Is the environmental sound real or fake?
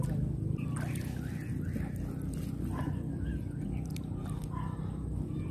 real